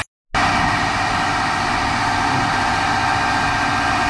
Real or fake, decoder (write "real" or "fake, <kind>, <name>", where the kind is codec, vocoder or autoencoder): real